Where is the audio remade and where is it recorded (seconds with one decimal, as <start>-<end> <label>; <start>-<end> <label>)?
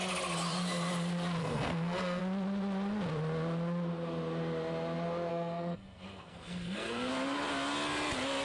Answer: 0.0-1.4 recorded; 1.4-2.2 remade; 2.2-5.3 recorded; 5.3-7.1 remade; 7.1-8.4 recorded